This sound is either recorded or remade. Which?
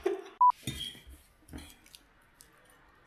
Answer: recorded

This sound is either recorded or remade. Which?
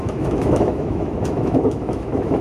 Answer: remade